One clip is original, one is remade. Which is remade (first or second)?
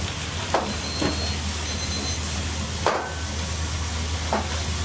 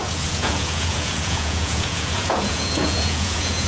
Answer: second